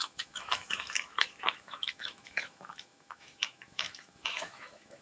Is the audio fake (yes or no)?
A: yes